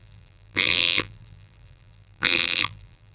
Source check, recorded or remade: remade